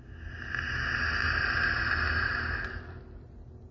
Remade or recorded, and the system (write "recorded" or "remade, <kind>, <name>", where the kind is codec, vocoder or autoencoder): recorded